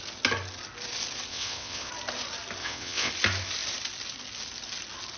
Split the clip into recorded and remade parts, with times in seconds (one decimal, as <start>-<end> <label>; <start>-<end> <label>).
0.0-1.3 recorded; 1.3-1.9 remade; 1.9-2.6 recorded; 2.6-3.1 remade; 3.1-5.2 recorded